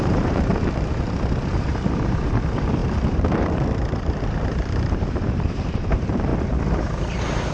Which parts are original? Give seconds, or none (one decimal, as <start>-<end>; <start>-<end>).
0.5-1.5; 6.3-7.0